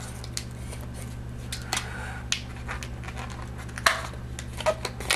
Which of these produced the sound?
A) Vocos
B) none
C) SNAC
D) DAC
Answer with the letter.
B